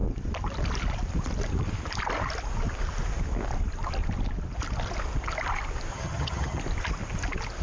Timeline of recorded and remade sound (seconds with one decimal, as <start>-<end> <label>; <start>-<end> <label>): 0.0-5.9 recorded; 5.9-6.6 remade; 6.6-7.6 recorded